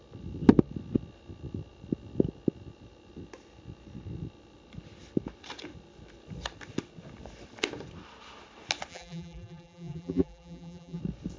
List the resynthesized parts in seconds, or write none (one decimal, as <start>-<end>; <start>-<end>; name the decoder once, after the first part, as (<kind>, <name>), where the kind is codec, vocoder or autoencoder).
8.9-11.0 (vocoder, BigVGAN v2)